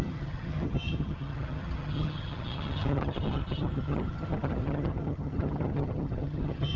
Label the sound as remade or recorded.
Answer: remade